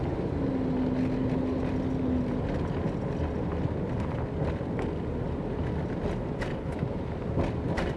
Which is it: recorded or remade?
recorded